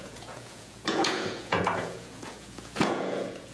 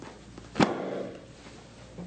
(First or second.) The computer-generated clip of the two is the first